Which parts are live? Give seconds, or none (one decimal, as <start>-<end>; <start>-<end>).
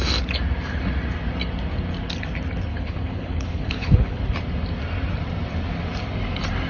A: 0.0-2.7; 4.2-6.7